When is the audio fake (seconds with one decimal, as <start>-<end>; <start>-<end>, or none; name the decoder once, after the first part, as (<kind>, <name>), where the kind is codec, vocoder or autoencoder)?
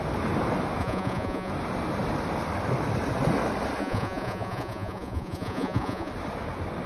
0.8-1.5 (vocoder, Vocos); 3.8-6.1